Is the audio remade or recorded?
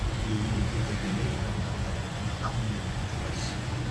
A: remade